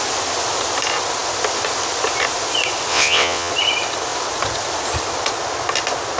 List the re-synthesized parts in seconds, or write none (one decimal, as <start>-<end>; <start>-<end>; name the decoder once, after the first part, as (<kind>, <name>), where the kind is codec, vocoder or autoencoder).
2.9-3.5 (vocoder, WaveNeXt)